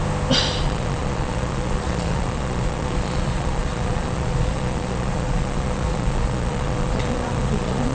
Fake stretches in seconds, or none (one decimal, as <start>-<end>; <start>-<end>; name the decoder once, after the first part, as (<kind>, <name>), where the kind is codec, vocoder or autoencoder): 0.6-7.9 (vocoder, Vocos)